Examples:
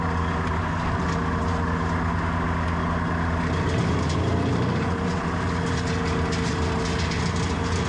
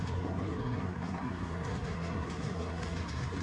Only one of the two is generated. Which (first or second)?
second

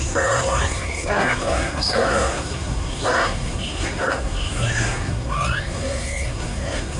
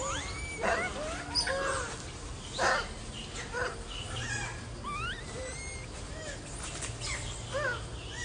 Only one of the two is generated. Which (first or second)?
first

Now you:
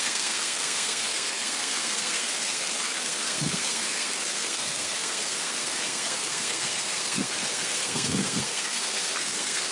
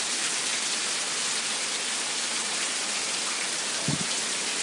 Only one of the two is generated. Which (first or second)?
first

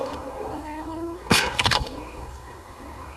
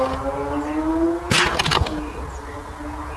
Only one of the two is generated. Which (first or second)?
first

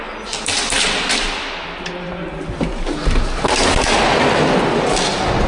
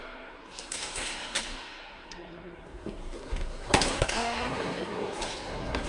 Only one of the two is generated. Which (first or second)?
second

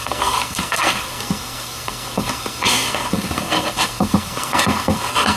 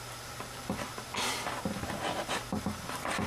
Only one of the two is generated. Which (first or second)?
first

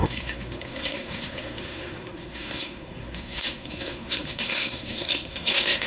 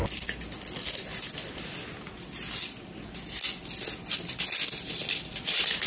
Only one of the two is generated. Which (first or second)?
first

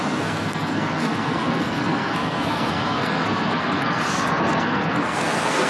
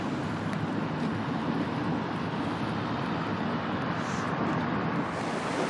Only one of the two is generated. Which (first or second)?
first